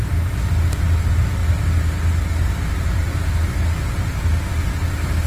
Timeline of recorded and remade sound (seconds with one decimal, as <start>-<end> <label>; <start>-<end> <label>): 0.0-5.3 recorded